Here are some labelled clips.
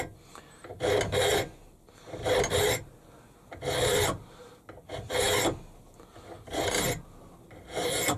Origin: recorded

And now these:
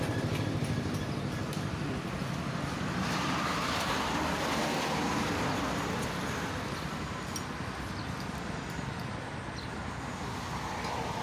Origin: recorded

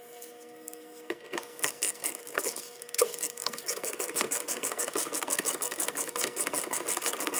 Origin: remade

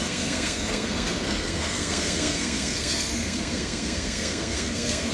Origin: remade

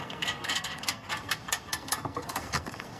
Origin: remade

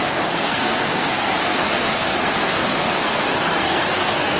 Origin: remade